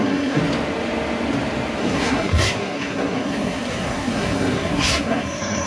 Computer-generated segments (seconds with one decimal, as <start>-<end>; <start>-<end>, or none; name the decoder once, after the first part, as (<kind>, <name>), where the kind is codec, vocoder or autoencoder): 0.0-0.4 (codec, SNAC); 1.8-5.7

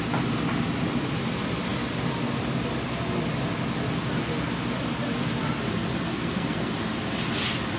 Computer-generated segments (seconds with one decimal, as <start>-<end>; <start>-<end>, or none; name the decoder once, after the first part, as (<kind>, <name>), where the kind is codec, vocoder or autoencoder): 6.1-6.7 (codec, SNAC)

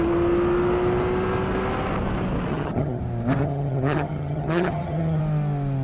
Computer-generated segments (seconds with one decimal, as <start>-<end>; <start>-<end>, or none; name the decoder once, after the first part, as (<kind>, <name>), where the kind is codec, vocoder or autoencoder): 2.5-3.0 (vocoder, HiFi-GAN); 3.4-5.2

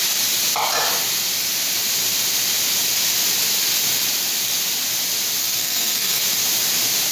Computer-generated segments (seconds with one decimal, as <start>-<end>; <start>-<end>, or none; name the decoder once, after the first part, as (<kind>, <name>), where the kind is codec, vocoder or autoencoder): 5.4-6.2 (codec, SNAC)

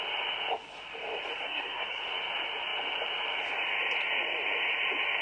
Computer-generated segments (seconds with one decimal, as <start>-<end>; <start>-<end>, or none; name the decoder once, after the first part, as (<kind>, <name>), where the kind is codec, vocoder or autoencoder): 1.4-2.0 (codec, SNAC)

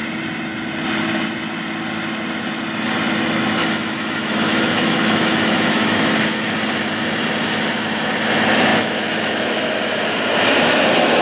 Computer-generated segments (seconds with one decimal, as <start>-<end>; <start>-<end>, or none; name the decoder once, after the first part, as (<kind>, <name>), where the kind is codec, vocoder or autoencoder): 3.6-6.5 (autoencoder, DAC-VAE); 8.7-9.6